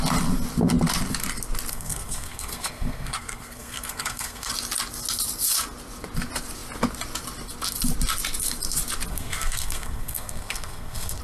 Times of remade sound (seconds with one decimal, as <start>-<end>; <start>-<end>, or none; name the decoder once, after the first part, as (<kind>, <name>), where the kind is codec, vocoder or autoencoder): 1.7-4.5 (codec, SNAC); 9.1-11.2